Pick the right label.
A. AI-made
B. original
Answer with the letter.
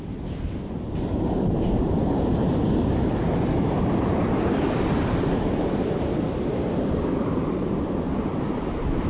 A